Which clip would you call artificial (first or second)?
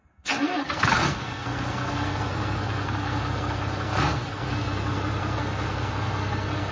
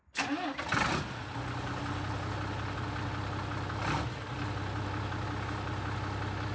first